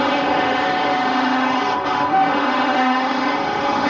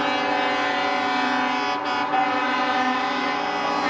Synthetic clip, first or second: first